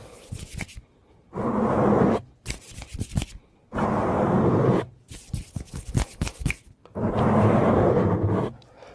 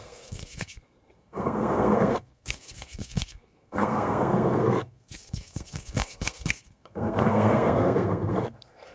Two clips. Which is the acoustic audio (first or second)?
first